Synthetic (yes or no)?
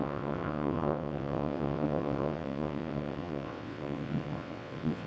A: yes